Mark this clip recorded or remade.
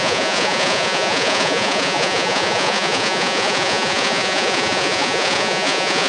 remade